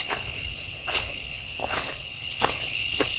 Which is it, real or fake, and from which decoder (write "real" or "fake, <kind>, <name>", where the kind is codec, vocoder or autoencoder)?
fake, codec, HILCodec